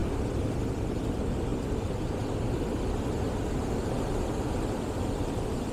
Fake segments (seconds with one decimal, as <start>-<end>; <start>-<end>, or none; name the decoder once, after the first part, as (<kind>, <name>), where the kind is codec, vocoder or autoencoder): none